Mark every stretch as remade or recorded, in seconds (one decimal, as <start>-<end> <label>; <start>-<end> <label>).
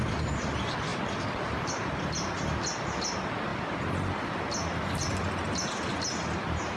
0.0-6.8 recorded